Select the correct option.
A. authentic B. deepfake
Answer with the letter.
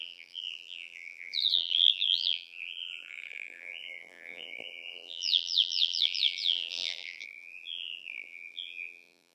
B